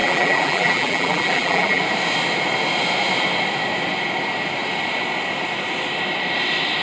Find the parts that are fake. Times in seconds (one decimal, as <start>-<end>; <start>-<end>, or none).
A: 0.0-1.8